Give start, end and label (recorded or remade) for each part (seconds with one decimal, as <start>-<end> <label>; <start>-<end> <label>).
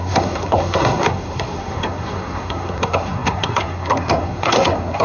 0.0-5.0 remade